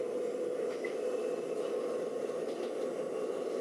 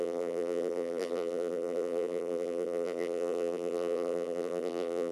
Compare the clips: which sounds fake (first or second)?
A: second